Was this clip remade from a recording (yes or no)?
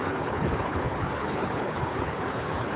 yes